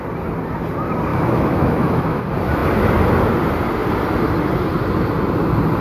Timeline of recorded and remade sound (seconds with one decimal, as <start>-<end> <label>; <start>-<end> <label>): 0.0-1.1 recorded; 1.1-2.2 remade; 2.2-5.8 recorded